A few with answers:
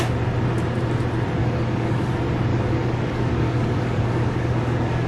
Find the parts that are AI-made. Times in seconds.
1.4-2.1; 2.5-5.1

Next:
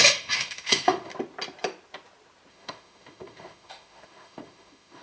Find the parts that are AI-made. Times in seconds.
0.0-1.1; 2.5-5.0

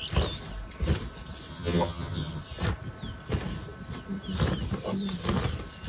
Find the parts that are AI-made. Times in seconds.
1.5-2.4

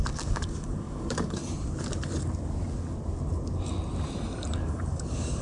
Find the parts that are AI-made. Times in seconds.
0.0-1.4; 4.6-5.4

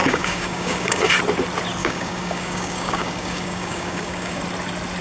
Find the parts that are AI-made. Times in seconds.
0.0-1.1; 1.8-4.4